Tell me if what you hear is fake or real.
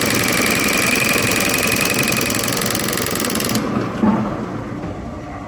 real